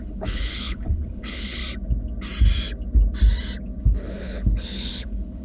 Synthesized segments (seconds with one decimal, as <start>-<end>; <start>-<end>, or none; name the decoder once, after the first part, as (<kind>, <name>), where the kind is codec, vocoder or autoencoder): 0.0-1.6 (codec, HILCodec); 3.8-5.4